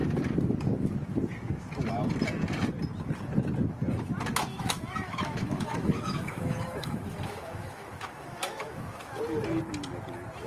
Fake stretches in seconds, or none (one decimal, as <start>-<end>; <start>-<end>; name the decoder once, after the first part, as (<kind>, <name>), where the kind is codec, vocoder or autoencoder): 4.5-9.2 (autoencoder, DAC-VAE)